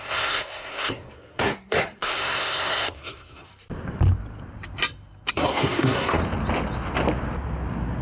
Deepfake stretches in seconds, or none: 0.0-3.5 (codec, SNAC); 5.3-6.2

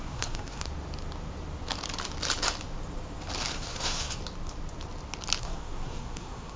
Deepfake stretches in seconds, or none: 0.0-0.7 (codec, SNAC); 3.5-4.2; 5.4-6.6

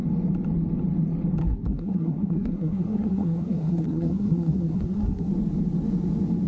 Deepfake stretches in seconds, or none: 1.4-5.3 (codec, SNAC)

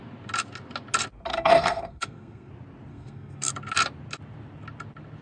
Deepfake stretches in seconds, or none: 1.3-2.5 (codec, SNAC); 2.9-3.5

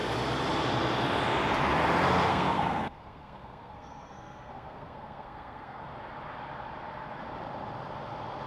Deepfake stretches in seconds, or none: 2.3-5.8 (codec, SNAC)